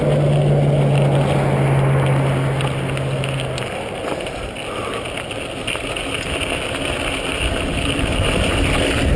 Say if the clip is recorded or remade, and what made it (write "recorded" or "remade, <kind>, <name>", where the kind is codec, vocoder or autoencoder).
recorded